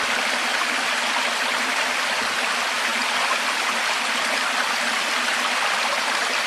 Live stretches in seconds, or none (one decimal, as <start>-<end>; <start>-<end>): 0.0-6.5